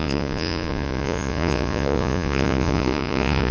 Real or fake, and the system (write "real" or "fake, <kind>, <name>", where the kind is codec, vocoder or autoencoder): fake, vocoder, Vocos